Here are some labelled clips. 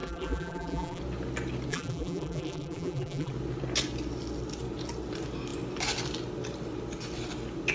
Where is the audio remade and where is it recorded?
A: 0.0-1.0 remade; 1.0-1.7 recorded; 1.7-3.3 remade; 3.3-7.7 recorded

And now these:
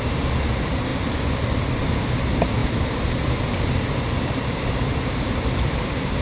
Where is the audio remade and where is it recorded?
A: 0.0-0.9 remade; 0.9-1.8 recorded; 1.8-6.2 remade

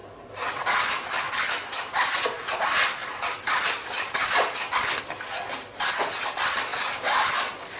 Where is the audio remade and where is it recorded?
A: 0.0-3.0 recorded; 3.0-5.0 remade; 5.0-6.7 recorded; 6.7-7.8 remade

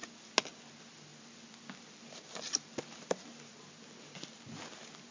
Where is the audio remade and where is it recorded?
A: 0.0-5.1 recorded

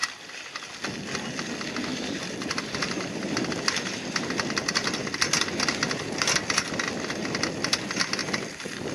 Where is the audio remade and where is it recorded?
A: 0.0-0.7 remade; 0.7-1.9 recorded; 1.9-6.2 remade; 6.2-8.9 recorded

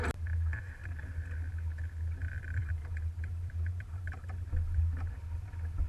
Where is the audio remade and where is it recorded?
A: 0.0-2.6 recorded; 2.6-4.5 remade; 4.5-5.9 recorded